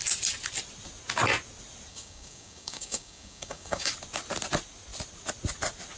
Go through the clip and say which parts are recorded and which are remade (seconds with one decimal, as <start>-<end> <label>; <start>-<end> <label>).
0.0-1.9 recorded; 1.9-3.9 remade; 3.9-6.0 recorded